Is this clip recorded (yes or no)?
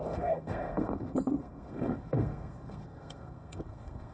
no